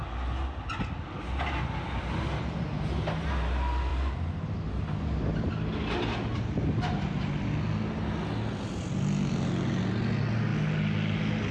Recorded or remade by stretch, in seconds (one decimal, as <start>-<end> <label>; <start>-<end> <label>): 0.0-11.5 recorded

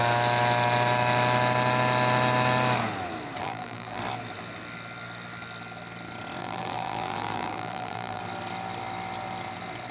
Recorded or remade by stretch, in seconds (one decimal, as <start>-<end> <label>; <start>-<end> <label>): 0.0-3.4 recorded; 3.4-4.0 remade; 4.0-6.4 recorded; 6.4-8.2 remade; 8.2-9.9 recorded

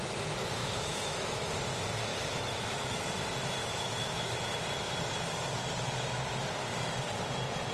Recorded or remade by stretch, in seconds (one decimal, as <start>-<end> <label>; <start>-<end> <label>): 0.0-0.6 recorded; 0.6-1.5 remade; 1.5-2.1 recorded; 2.1-3.0 remade; 3.0-3.6 recorded; 3.6-4.4 remade; 4.4-7.7 recorded

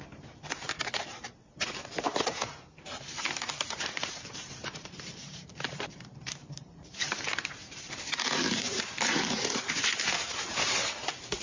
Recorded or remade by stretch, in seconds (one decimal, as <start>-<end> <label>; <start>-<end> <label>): 0.0-11.4 remade

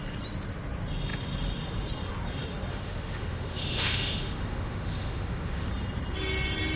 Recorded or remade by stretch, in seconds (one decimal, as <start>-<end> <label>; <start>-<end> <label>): 0.0-2.7 recorded; 2.7-5.7 remade; 5.7-6.8 recorded

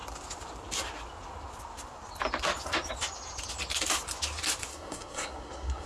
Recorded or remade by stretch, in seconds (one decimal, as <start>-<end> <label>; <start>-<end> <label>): 0.0-4.7 recorded; 4.7-5.9 remade